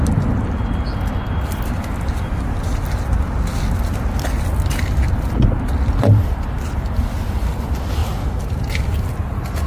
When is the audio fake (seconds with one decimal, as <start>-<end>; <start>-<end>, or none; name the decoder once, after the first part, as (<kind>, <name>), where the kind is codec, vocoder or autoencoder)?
none